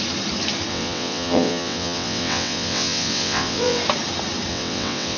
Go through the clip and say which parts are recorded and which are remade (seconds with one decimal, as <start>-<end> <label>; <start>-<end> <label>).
0.0-0.7 recorded; 0.7-3.8 remade; 3.8-4.5 recorded; 4.5-5.2 remade